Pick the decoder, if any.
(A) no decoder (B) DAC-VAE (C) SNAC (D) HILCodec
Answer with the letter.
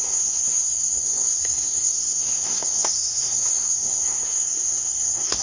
C